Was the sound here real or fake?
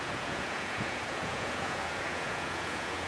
fake